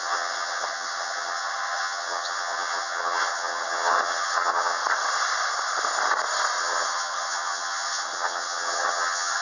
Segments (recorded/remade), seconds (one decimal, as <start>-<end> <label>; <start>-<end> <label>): 0.0-4.8 remade; 4.8-6.6 recorded; 6.6-9.4 remade